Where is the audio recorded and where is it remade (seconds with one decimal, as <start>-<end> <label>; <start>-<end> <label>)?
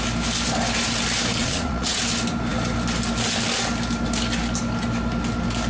0.0-1.4 recorded; 1.4-2.0 remade; 2.0-5.7 recorded